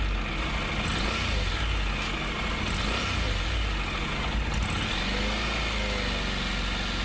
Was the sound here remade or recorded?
recorded